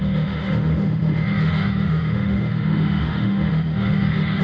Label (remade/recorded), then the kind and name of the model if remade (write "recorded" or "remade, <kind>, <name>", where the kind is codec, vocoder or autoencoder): remade, autoencoder, DAC-VAE